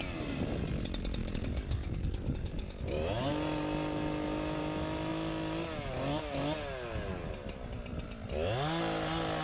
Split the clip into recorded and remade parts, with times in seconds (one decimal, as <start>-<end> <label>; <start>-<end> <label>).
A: 0.0-1.2 recorded; 1.2-2.8 remade; 2.8-9.4 recorded